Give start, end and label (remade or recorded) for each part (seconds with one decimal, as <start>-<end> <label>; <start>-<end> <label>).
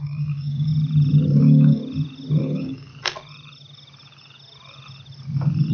0.0-0.7 remade; 0.7-1.4 recorded; 1.4-1.8 remade; 1.8-2.4 recorded; 2.4-2.9 remade; 2.9-5.7 recorded